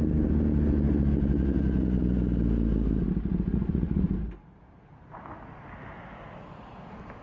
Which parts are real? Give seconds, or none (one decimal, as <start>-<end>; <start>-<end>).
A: 0.0-3.5; 4.1-7.2